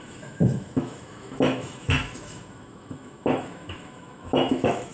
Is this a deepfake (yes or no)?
yes